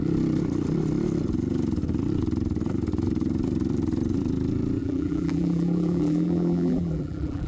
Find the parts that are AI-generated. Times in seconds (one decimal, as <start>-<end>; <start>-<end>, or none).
4.8-7.5